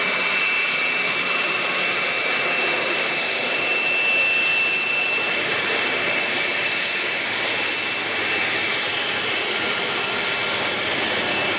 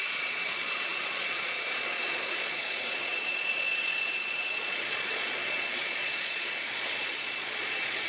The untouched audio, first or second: first